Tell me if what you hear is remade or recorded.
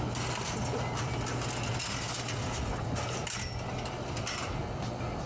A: recorded